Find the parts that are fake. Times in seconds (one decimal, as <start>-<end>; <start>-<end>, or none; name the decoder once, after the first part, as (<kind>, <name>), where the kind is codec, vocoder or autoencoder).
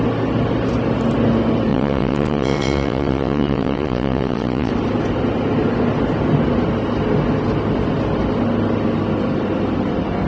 1.7-4.7 (vocoder, WaveNeXt)